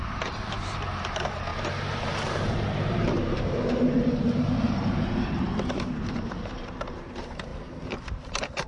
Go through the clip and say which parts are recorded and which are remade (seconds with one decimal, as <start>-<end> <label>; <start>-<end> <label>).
0.0-7.5 remade; 7.5-8.1 recorded; 8.1-8.7 remade